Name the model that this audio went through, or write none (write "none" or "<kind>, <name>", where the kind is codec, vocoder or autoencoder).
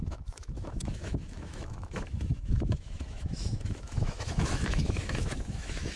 autoencoder, DAC-VAE